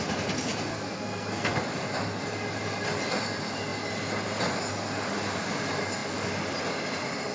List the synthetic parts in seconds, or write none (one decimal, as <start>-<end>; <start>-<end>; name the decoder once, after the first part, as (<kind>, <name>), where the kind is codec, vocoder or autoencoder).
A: 0.7-1.6 (codec, SNAC)

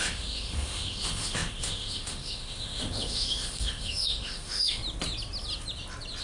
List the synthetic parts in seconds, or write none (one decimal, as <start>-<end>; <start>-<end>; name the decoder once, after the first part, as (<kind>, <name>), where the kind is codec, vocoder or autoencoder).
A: 0.0-4.8 (autoencoder, DAC-VAE)

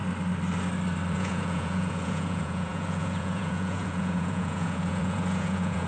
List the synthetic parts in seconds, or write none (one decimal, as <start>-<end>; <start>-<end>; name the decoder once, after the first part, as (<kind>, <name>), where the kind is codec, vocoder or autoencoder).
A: 1.1-5.9 (vocoder, Vocos)

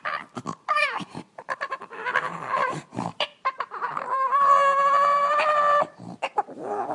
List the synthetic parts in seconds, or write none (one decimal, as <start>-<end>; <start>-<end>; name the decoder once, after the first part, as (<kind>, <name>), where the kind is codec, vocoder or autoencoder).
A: 0.0-6.9 (vocoder, BigVGAN v2)

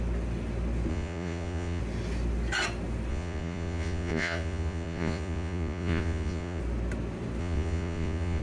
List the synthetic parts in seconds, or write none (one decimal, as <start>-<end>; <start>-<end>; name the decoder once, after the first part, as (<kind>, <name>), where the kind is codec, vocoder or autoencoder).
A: 0.9-1.8 (vocoder, Vocos); 3.1-6.6; 7.4-8.4